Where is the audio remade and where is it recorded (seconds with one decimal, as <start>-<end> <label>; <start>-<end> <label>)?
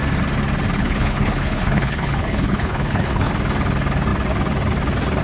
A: 0.0-0.8 recorded; 0.8-3.3 remade; 3.3-5.2 recorded